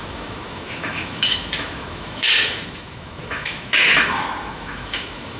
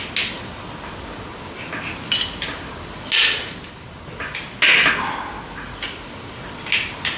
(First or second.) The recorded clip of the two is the second